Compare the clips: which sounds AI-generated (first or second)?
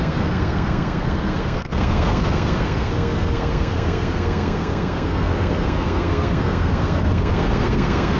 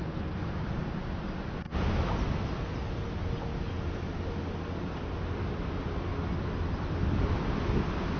first